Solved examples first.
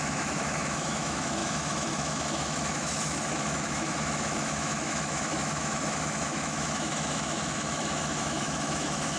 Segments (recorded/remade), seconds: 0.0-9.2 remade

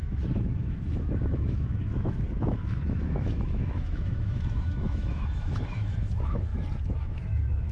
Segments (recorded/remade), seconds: 0.0-6.5 remade; 6.5-7.0 recorded; 7.0-7.7 remade

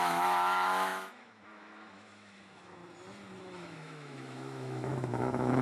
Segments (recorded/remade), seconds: 0.0-2.8 remade; 2.8-3.4 recorded; 3.4-5.6 remade

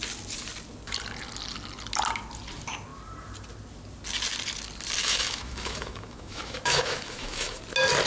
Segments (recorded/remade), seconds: 0.0-5.0 recorded; 5.0-7.6 remade; 7.6-8.1 recorded

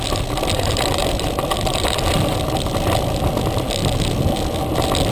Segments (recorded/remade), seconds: 0.0-5.1 recorded